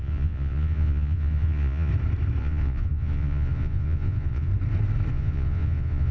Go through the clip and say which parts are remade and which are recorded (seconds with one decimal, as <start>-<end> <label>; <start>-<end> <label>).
0.0-1.9 remade; 1.9-2.4 recorded; 2.4-4.5 remade; 4.5-5.1 recorded; 5.1-6.1 remade

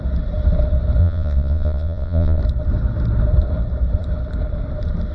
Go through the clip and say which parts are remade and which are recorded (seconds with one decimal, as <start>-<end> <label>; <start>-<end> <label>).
0.0-1.0 recorded; 1.0-2.4 remade; 2.4-5.1 recorded